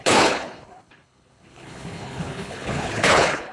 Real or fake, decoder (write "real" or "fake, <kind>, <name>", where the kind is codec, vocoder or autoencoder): fake, codec, HILCodec